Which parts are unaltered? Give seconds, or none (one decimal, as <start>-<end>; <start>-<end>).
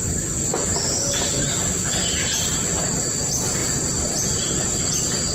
0.0-3.6; 4.4-5.3